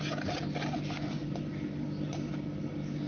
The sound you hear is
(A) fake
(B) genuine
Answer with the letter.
B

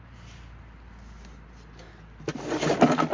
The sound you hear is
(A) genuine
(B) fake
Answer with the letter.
A